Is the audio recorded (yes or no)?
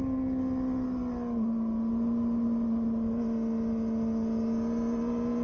yes